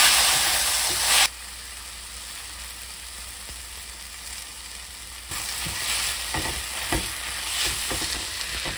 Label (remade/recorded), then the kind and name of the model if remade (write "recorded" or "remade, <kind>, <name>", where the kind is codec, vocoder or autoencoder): recorded